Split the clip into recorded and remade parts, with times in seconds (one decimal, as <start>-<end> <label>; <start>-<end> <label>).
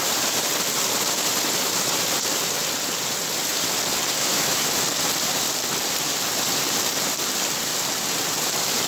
0.0-4.2 recorded; 4.2-4.7 remade; 4.7-8.9 recorded